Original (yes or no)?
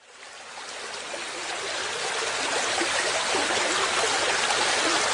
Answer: yes